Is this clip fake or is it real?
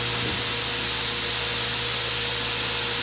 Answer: real